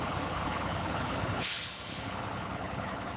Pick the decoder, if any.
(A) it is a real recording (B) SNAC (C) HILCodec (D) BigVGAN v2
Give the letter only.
C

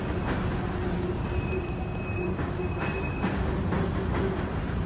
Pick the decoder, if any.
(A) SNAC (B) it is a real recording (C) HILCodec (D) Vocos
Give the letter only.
B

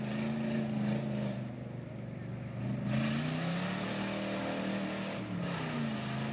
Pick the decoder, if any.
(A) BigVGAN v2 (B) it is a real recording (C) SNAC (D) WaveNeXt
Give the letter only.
B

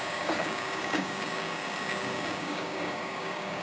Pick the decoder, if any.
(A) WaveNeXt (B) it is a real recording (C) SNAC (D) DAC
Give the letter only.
D